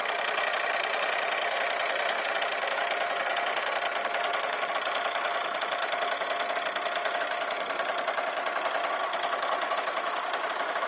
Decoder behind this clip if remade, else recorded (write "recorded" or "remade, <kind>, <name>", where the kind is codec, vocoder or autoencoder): recorded